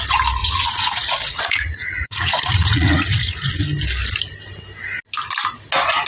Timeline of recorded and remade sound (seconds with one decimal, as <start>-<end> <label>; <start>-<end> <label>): 0.0-0.4 recorded; 0.4-3.5 remade; 3.5-6.1 recorded